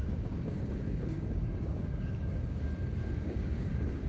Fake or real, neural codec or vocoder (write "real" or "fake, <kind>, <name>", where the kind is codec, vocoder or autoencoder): fake, codec, DAC